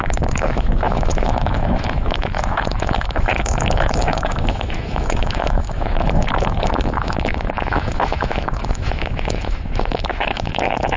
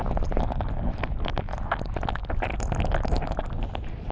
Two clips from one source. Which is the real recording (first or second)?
second